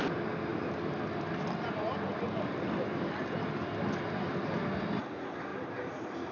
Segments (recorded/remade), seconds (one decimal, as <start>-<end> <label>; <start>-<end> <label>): 0.0-0.5 recorded; 0.5-3.4 remade; 3.4-5.5 recorded; 5.5-6.3 remade